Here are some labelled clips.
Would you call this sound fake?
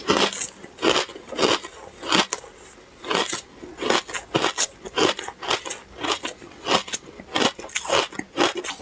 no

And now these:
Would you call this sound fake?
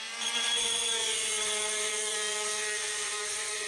yes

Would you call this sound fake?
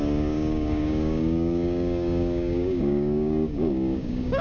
yes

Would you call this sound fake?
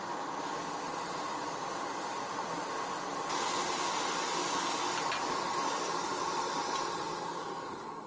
no